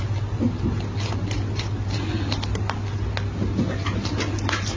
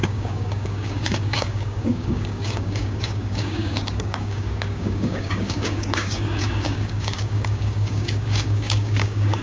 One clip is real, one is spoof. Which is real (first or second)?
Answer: first